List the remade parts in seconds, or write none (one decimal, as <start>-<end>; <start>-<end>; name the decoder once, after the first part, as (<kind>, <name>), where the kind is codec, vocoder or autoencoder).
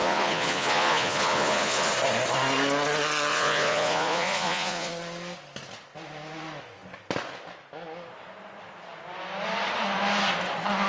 0.0-1.9 (vocoder, Vocos); 3.3-4.9